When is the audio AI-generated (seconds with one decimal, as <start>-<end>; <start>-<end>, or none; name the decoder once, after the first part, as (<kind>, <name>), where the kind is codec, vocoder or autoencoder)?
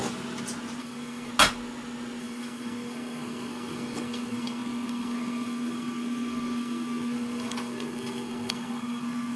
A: 0.8-1.3 (codec, SNAC); 2.2-9.4